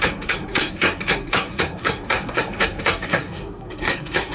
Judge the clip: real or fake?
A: fake